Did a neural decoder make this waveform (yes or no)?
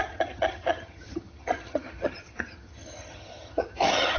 yes